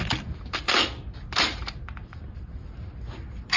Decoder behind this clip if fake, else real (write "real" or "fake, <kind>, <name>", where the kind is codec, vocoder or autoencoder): real